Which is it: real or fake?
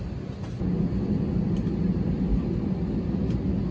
real